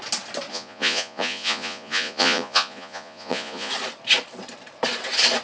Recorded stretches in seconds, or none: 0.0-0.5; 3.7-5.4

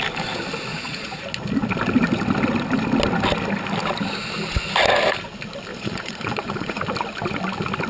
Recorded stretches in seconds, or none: 0.0-0.7; 1.2-5.7; 6.8-7.9

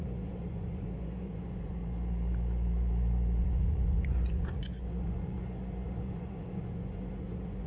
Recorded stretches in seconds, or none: 1.8-3.4

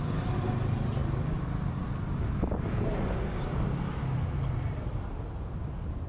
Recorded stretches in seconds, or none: 0.0-6.1

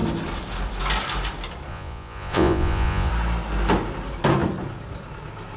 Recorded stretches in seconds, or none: 0.0-1.7; 3.1-5.6

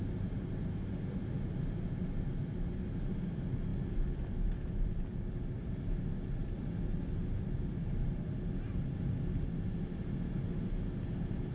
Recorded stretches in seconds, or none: 0.0-11.5

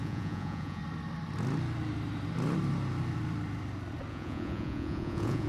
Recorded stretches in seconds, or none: 0.8-4.1

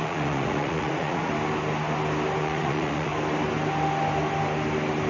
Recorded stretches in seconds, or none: 1.3-2.4; 3.1-5.1